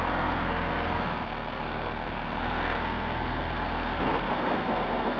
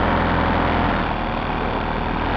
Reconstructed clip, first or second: first